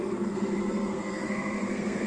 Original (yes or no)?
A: no